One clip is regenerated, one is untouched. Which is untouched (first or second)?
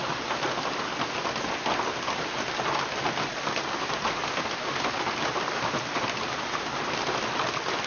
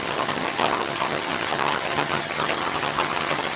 first